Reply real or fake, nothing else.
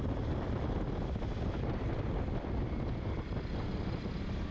real